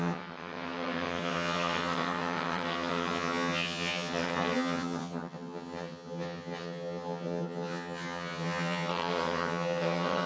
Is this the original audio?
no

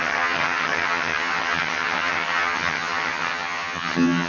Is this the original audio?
no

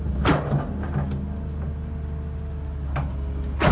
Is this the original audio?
yes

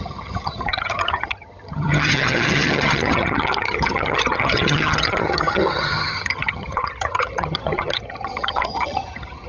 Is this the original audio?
no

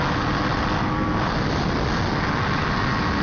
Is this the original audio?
yes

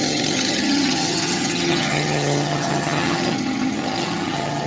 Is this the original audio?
no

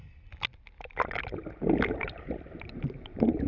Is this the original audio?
yes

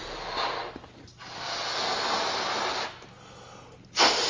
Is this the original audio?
yes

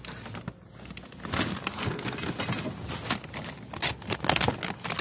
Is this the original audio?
yes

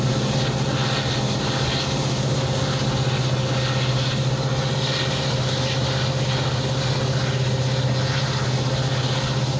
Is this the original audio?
yes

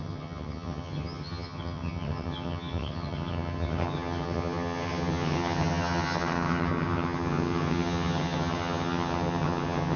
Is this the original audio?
no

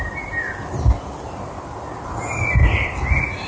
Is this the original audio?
yes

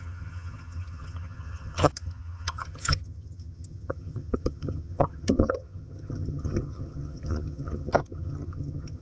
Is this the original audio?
no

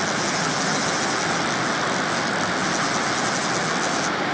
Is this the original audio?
yes